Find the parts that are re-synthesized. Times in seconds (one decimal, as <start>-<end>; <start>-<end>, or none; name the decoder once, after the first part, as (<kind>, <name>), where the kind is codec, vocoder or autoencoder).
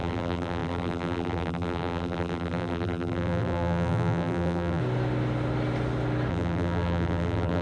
0.0-4.8 (vocoder, BigVGAN v2); 6.3-7.6